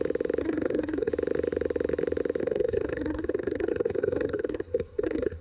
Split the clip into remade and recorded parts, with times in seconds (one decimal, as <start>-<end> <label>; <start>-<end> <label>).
0.0-0.4 recorded; 0.4-1.1 remade; 1.1-2.4 recorded; 2.4-5.4 remade

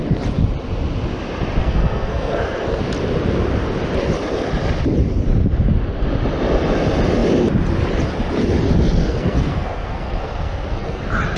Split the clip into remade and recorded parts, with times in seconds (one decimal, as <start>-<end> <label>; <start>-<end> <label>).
0.0-1.6 recorded; 1.6-2.8 remade; 2.8-9.0 recorded; 9.0-11.0 remade; 11.0-11.4 recorded

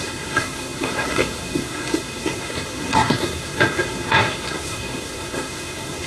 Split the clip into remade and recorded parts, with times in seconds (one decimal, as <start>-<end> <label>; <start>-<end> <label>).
0.0-6.1 remade

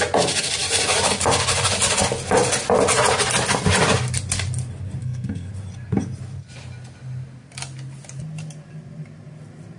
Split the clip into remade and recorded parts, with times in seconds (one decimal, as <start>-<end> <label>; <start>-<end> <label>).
0.0-5.0 recorded; 5.0-5.5 remade; 5.5-9.8 recorded

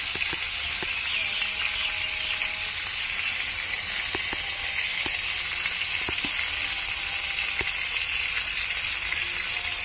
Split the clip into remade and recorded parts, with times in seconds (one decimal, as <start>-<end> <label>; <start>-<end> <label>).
0.0-9.8 recorded

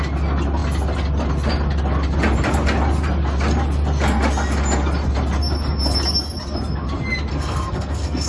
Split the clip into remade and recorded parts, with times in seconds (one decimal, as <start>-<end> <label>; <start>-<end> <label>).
0.0-7.3 recorded; 7.3-8.3 remade